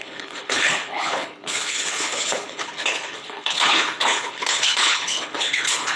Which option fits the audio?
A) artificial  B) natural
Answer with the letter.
A